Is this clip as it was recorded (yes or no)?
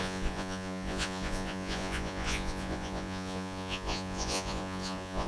no